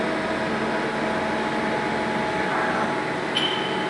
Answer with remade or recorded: recorded